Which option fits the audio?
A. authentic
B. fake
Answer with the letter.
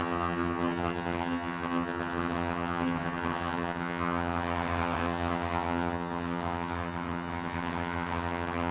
B